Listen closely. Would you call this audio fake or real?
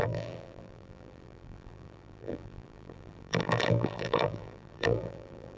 fake